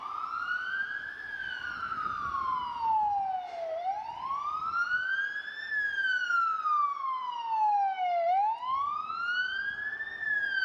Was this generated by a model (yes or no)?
no